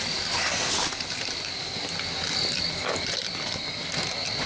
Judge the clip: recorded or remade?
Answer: recorded